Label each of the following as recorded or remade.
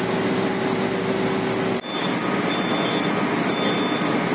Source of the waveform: recorded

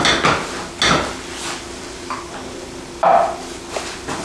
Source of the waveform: recorded